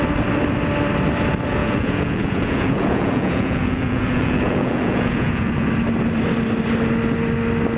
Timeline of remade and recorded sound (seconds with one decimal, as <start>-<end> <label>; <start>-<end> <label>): 0.0-1.6 recorded; 1.6-5.7 remade; 5.7-7.8 recorded